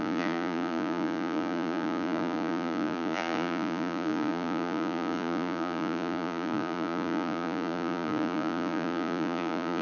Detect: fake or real fake